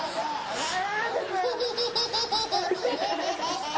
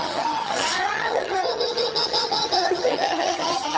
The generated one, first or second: second